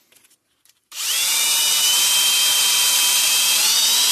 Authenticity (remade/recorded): remade